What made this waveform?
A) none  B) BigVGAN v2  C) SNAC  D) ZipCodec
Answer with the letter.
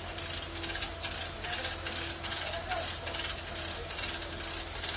A